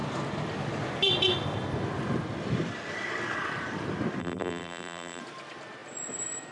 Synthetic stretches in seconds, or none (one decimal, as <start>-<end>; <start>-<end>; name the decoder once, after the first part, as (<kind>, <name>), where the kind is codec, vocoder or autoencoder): 4.2-5.2 (vocoder, BigVGAN v2)

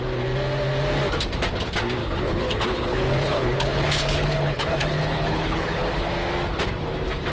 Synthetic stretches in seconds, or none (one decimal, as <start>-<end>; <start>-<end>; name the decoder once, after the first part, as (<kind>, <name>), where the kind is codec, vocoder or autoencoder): 2.0-6.1 (codec, HILCodec)

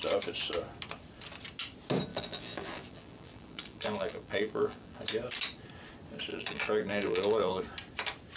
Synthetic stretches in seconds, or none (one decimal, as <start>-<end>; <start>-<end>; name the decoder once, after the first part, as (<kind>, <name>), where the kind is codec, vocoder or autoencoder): 2.1-5.0 (vocoder, BigVGAN v2); 6.3-7.6

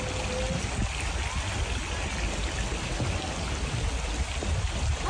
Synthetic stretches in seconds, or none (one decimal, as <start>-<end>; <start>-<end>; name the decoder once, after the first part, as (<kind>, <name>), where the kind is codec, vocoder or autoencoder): none

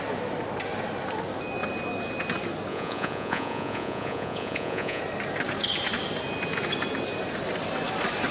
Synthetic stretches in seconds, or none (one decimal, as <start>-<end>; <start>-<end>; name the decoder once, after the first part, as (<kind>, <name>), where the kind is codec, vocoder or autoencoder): 2.7-5.0 (vocoder, Vocos)

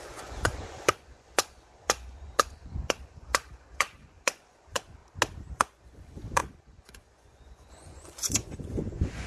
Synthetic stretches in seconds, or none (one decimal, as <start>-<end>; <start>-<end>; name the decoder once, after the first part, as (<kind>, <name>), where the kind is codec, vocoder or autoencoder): 0.0-5.0 (vocoder, Vocos); 5.5-9.3

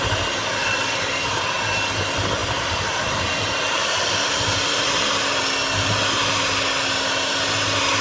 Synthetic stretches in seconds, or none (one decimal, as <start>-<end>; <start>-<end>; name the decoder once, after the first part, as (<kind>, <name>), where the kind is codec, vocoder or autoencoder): 0.6-1.5 (vocoder, BigVGAN v2); 2.4-5.4

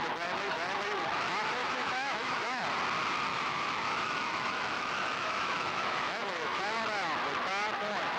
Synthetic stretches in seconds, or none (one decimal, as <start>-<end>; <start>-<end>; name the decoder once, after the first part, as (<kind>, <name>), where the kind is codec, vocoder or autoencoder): 1.6-2.6 (autoencoder, DAC-VAE); 3.3-6.6